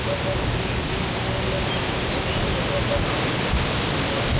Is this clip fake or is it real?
real